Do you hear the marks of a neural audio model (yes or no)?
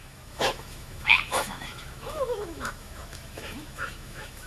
yes